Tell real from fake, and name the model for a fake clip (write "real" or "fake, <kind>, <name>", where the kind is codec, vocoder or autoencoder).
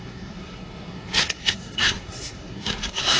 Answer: fake, codec, SNAC